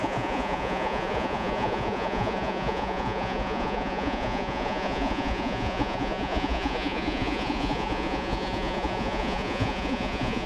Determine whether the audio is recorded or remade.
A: remade